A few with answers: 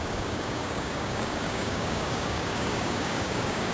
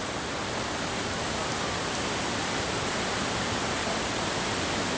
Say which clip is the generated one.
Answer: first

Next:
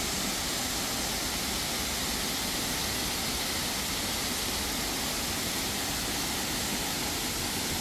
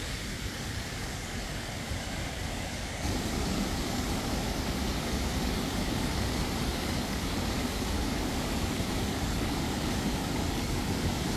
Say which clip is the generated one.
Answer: second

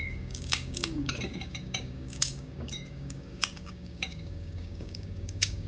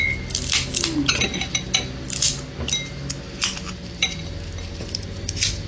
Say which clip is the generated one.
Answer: first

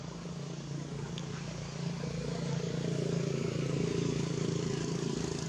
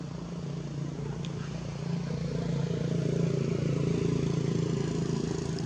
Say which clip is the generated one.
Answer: first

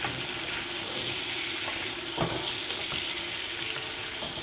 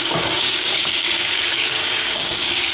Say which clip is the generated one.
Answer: second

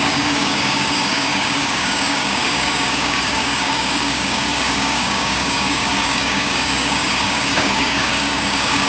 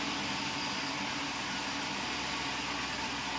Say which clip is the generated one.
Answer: first